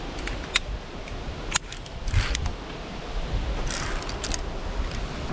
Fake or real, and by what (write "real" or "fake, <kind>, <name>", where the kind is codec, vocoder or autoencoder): real